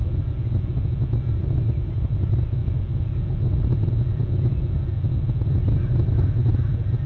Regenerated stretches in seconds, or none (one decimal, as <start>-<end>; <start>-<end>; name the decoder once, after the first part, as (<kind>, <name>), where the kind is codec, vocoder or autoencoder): 1.4-2.6 (vocoder, BigVGAN v2)